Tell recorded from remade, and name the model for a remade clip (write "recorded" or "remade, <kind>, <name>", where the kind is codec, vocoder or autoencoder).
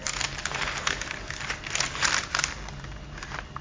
recorded